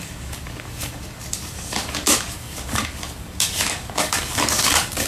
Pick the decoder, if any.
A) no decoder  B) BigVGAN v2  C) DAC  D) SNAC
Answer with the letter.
C